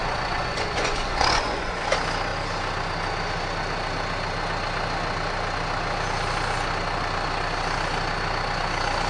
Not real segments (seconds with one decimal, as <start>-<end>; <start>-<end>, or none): 0.0-1.7